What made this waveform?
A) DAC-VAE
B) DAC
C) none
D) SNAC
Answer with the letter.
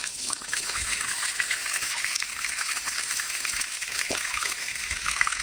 A